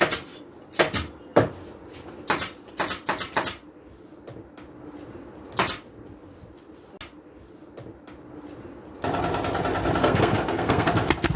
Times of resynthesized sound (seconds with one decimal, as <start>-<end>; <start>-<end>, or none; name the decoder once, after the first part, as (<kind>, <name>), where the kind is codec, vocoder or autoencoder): 10.0-10.9 (codec, SNAC)